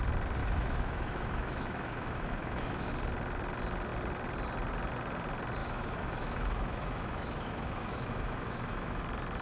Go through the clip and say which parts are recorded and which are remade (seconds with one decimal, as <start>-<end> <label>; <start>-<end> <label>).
0.0-0.4 recorded; 0.4-2.9 remade; 2.9-5.6 recorded; 5.6-9.0 remade; 9.0-9.4 recorded